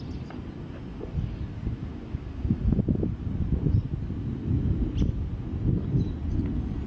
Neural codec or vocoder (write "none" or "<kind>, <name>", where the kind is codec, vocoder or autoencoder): none